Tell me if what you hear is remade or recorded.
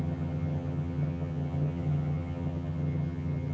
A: remade